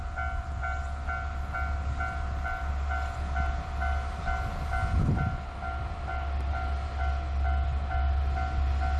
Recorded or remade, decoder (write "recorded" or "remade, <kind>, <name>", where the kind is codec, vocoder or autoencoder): recorded